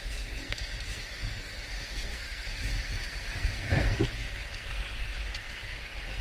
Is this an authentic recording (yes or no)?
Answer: no